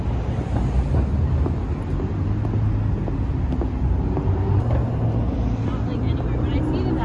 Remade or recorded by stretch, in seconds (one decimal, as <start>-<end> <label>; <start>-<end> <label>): 0.0-7.0 recorded

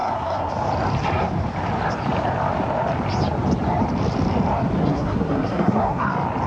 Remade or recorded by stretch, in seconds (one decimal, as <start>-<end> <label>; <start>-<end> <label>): 0.0-0.5 remade; 0.5-4.8 recorded; 4.8-6.1 remade; 6.1-6.5 recorded

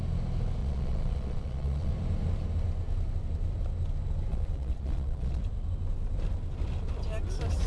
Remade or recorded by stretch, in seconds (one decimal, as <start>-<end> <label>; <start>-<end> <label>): 0.0-0.6 recorded; 0.6-1.9 remade; 1.9-4.3 recorded; 4.3-5.4 remade; 5.4-7.7 recorded

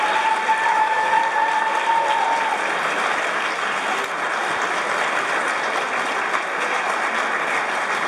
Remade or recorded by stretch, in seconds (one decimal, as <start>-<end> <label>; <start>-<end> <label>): 0.0-0.7 recorded; 0.7-1.2 remade; 1.2-8.1 recorded